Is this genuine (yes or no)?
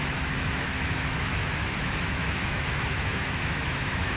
no